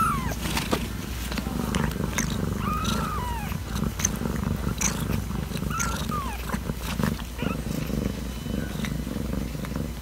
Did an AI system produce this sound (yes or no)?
no